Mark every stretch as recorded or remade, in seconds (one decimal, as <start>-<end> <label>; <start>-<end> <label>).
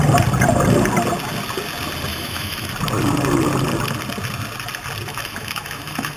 0.0-2.1 recorded; 2.1-2.7 remade; 2.7-5.1 recorded; 5.1-6.2 remade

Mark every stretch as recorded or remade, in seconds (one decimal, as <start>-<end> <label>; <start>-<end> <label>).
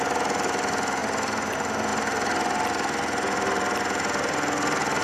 0.0-5.0 recorded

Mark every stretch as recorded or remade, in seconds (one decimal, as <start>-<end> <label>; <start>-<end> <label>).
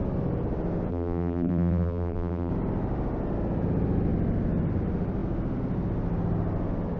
0.0-0.9 recorded; 0.9-2.5 remade; 2.5-7.0 recorded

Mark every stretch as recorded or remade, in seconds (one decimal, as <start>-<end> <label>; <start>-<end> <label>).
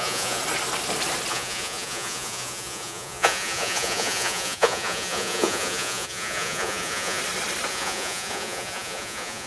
0.0-0.4 remade; 0.4-1.3 recorded; 1.3-7.2 remade; 7.2-7.7 recorded; 7.7-9.5 remade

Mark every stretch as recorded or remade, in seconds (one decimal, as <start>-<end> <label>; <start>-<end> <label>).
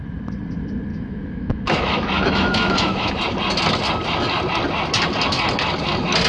0.0-0.9 recorded; 0.9-3.1 remade; 3.1-6.3 recorded